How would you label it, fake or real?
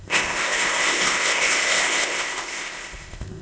fake